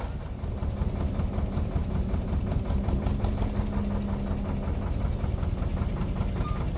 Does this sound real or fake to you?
real